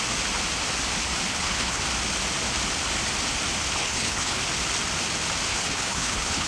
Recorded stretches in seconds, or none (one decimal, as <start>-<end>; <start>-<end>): 0.0-1.3; 1.8-3.8; 4.4-5.5